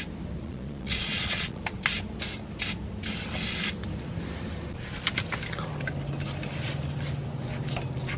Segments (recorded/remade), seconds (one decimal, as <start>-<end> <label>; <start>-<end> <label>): 0.0-0.4 recorded; 0.4-1.6 remade; 1.6-8.2 recorded